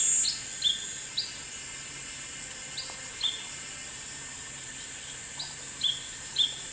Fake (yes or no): no